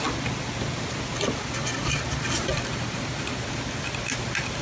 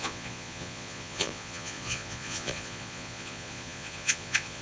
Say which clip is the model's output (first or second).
second